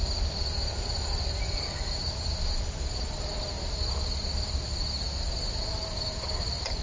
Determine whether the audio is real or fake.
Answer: real